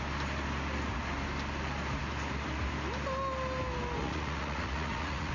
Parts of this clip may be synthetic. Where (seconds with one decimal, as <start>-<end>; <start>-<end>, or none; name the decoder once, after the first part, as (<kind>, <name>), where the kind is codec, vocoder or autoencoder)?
4.0-5.3 (vocoder, Vocos)